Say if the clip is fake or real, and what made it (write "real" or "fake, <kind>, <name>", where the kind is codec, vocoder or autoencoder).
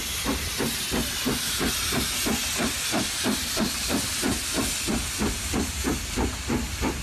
real